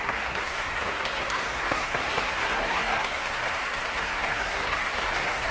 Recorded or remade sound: remade